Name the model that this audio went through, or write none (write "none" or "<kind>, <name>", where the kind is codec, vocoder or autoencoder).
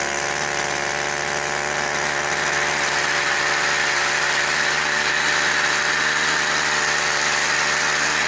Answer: none